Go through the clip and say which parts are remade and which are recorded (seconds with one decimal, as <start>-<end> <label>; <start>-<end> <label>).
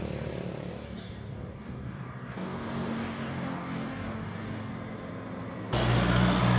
0.0-0.7 recorded; 0.7-4.7 remade; 4.7-6.6 recorded